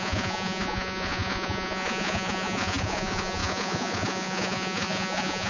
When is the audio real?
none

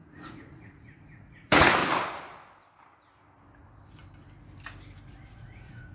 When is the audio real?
1.8-5.3

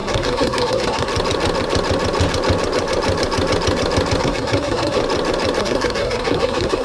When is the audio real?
1.1-4.2; 5.0-5.6

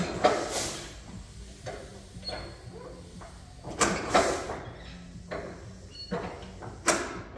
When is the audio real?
0.0-7.4

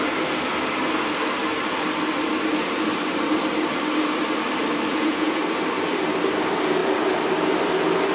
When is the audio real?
0.0-4.9; 5.4-8.1

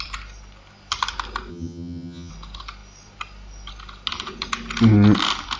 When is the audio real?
0.0-1.5; 2.3-5.6